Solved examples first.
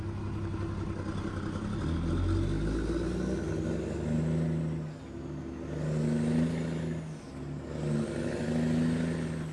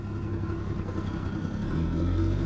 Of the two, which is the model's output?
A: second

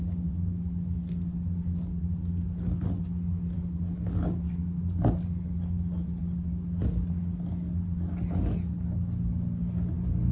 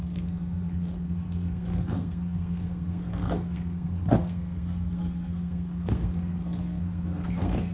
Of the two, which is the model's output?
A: second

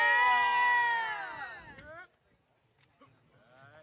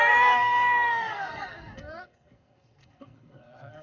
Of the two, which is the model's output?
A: second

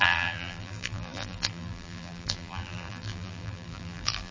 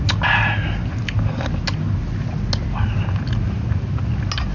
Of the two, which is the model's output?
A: first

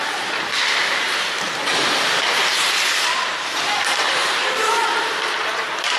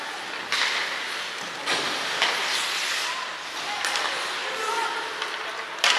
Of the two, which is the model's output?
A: first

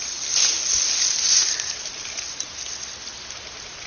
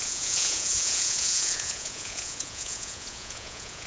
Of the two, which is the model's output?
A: second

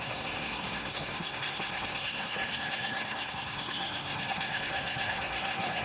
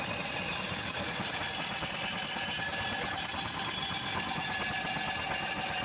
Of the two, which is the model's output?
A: first